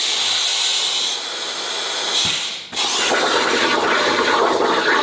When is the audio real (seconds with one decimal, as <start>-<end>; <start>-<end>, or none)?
0.0-5.0

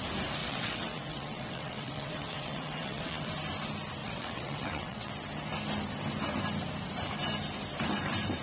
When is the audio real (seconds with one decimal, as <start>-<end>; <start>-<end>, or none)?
0.0-0.4; 3.3-4.0; 5.1-8.4

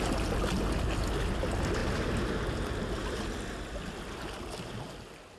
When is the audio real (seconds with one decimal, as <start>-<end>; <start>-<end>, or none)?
0.0-5.4

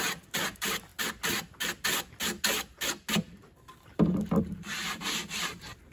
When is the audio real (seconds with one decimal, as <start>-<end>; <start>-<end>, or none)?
0.9-4.4

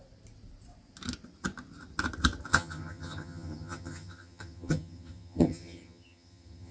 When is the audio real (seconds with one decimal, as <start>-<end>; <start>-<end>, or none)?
0.0-2.5

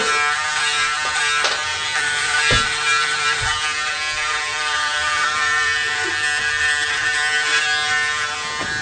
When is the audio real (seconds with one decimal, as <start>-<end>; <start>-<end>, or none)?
0.0-1.7; 2.5-2.9; 3.5-4.5; 6.1-8.8

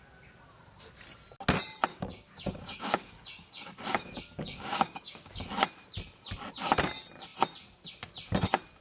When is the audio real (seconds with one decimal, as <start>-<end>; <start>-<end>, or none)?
0.0-1.9; 5.5-8.8

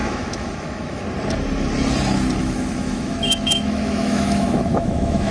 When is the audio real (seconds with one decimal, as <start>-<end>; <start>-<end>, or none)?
1.0-2.4